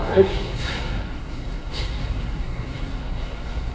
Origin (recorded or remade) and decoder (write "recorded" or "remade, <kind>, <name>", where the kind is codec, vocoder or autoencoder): remade, codec, SNAC